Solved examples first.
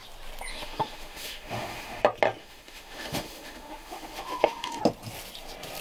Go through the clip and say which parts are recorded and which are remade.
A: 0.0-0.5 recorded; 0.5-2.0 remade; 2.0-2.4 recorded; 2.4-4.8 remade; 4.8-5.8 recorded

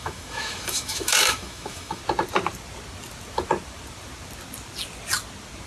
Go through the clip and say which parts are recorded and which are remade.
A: 0.0-2.0 remade; 2.0-5.7 recorded

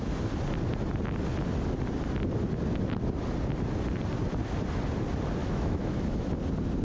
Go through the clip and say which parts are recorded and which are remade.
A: 0.0-5.4 recorded; 5.4-6.3 remade; 6.3-6.8 recorded